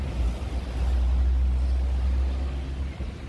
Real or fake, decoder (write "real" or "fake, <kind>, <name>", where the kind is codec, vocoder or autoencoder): real